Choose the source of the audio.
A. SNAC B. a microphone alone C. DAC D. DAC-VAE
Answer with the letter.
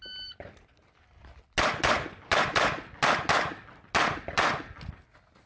B